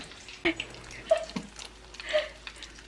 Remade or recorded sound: recorded